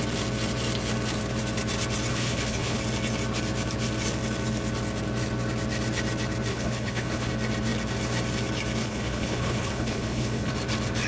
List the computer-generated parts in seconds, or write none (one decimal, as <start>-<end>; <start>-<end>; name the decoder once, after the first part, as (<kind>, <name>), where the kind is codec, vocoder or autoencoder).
2.1-2.8 (codec, HILCodec); 6.5-7.3; 8.8-10.5